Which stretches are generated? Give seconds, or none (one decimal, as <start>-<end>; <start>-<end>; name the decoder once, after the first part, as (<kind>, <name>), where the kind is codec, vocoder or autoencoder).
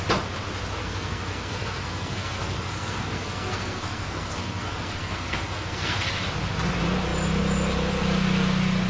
0.8-6.1 (codec, SNAC)